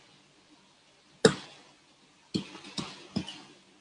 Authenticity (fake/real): real